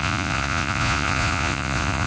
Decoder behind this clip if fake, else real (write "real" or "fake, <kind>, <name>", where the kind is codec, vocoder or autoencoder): fake, vocoder, Vocos